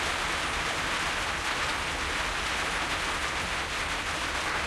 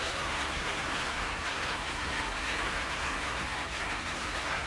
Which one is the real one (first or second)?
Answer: first